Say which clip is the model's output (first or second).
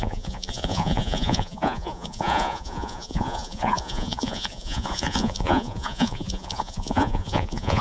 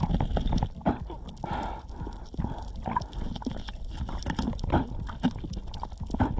first